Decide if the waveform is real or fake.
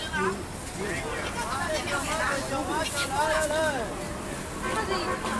real